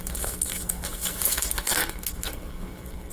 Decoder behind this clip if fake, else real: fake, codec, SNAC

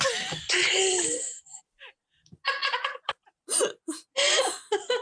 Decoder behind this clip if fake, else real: real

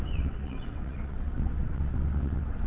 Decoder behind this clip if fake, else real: fake, vocoder, WaveNeXt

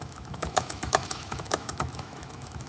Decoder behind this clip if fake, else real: fake, autoencoder, DAC-VAE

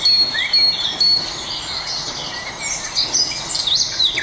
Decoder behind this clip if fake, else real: real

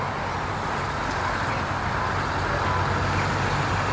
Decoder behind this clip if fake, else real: real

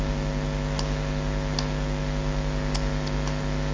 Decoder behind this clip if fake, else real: real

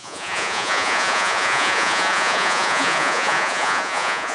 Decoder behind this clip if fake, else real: fake, vocoder, Vocos